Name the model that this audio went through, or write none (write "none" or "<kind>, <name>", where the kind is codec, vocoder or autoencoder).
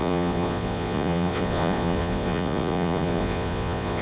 vocoder, Vocos